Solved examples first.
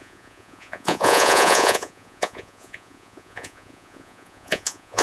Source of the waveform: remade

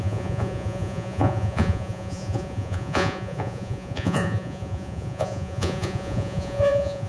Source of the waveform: remade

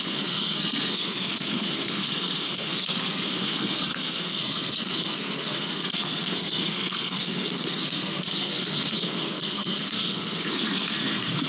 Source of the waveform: remade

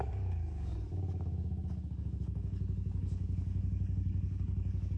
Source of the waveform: remade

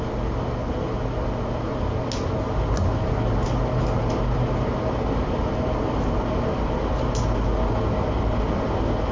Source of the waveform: recorded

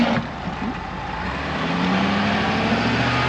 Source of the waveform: recorded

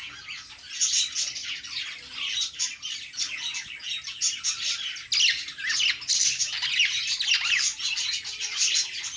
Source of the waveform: recorded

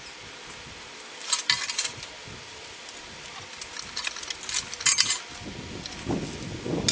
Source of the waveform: recorded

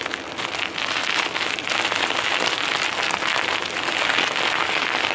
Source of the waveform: recorded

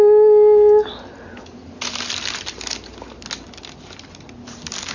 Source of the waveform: recorded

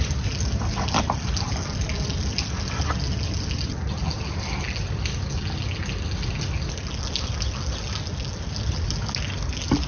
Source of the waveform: recorded